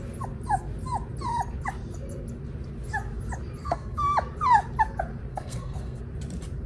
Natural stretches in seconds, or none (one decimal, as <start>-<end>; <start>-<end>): 0.0-3.6; 4.1-5.3; 6.0-6.7